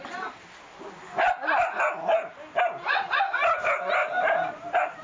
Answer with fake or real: real